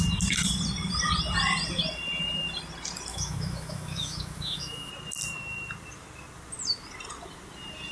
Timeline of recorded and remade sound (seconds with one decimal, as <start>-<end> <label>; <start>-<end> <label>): 0.0-3.1 recorded; 3.1-4.9 remade; 4.9-7.9 recorded